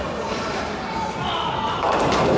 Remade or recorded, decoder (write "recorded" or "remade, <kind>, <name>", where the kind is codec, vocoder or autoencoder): recorded